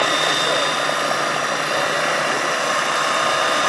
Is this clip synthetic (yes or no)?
yes